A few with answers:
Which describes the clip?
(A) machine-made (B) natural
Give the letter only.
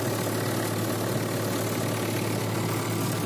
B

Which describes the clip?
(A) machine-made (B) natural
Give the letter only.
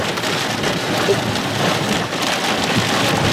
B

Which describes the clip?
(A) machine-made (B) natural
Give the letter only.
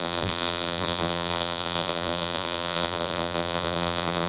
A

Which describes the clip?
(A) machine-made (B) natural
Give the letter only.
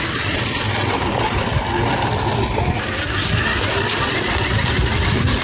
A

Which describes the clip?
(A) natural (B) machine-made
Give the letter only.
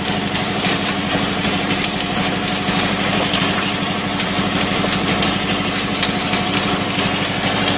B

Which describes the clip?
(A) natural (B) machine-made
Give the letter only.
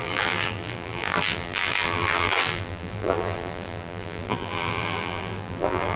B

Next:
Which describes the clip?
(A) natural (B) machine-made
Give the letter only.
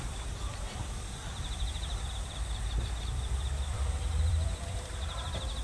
B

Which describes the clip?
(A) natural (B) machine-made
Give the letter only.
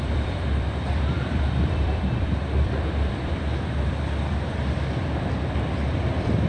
B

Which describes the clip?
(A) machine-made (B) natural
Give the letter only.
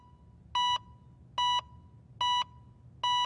B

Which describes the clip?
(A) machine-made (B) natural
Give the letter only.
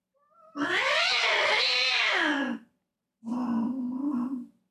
A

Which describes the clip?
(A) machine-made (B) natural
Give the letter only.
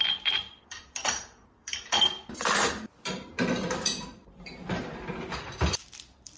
A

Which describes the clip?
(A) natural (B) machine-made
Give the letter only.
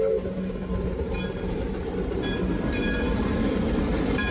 B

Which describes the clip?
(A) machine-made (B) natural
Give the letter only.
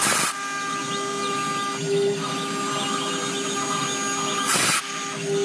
B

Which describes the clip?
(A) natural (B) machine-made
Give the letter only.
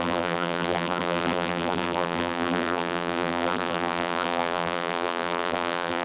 B